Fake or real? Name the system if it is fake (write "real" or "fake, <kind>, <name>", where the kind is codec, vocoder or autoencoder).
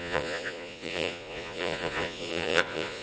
fake, vocoder, Vocos